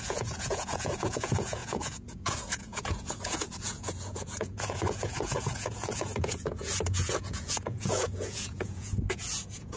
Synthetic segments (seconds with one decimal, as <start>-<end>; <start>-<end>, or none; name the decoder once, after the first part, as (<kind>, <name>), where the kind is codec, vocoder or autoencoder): 0.0-9.8 (vocoder, Vocos)